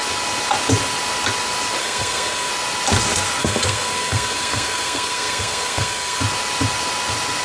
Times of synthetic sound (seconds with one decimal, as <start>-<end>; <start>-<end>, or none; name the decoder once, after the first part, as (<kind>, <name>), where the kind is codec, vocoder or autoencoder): 1.8-2.5 (codec, SNAC); 3.4-6.2